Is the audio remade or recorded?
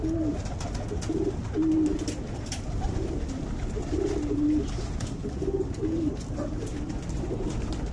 recorded